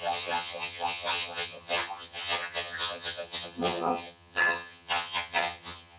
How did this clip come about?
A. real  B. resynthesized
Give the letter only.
B